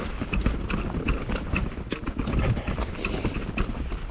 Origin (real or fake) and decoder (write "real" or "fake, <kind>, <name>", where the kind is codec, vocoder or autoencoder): real